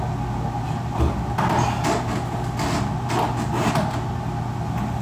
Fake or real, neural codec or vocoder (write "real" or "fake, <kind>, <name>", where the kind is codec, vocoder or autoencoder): real